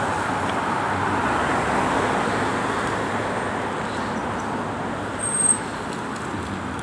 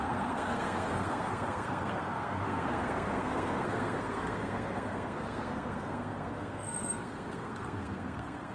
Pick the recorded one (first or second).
first